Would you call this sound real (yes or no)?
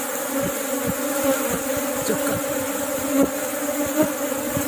yes